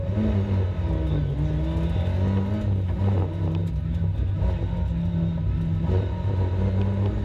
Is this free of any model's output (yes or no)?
yes